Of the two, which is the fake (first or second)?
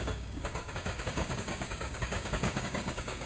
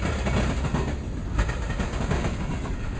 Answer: first